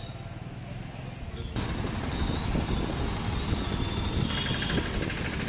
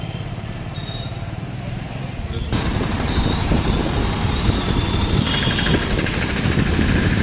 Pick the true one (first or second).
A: first